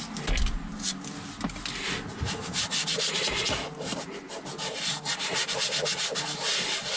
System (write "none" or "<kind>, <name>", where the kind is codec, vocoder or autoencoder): none